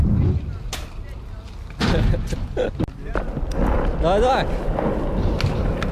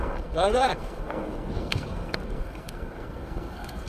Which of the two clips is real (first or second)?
first